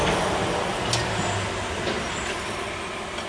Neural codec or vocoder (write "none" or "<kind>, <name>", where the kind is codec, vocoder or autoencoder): none